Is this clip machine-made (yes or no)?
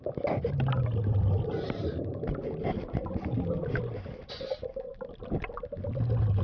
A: no